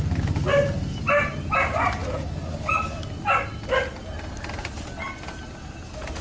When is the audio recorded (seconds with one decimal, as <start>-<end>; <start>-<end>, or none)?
0.0-6.2